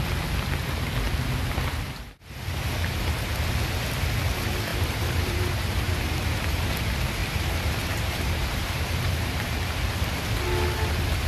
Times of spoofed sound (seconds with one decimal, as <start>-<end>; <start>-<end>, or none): 4.7-5.9; 7.2-9.6